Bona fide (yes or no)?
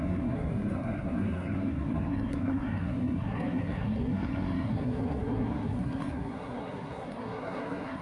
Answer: no